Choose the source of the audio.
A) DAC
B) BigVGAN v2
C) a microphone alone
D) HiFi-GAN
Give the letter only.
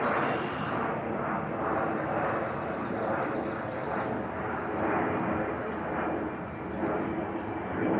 C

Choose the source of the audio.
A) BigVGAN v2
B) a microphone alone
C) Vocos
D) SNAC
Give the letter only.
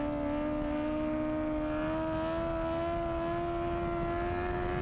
B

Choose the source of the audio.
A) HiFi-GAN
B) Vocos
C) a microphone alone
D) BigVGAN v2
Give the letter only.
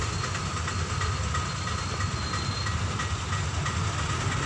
C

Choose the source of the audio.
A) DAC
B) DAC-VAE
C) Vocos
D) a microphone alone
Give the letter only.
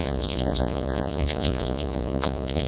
C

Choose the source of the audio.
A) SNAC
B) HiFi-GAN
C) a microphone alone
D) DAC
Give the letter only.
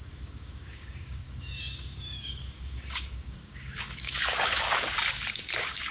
D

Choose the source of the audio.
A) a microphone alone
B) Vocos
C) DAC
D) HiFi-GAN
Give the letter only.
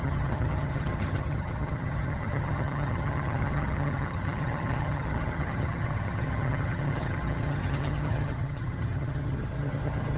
D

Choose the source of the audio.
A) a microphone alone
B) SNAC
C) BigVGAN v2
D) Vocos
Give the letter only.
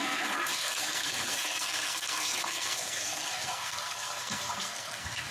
B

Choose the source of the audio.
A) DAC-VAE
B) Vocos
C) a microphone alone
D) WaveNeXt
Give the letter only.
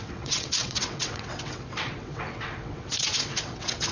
D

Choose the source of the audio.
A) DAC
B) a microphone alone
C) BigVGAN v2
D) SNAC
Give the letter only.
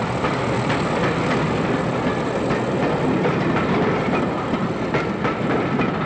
B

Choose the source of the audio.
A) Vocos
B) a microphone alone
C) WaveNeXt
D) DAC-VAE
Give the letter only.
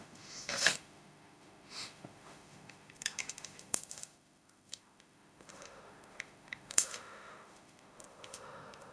D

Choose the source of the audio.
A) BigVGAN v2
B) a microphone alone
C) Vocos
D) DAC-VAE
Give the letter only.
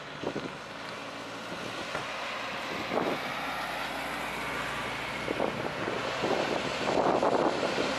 B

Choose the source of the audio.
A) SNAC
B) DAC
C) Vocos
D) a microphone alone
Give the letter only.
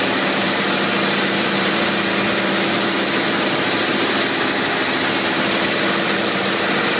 D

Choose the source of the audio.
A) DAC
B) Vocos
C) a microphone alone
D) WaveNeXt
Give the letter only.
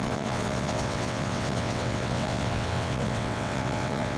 D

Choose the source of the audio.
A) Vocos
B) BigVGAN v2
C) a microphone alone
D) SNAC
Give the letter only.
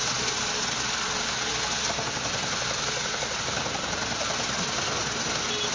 C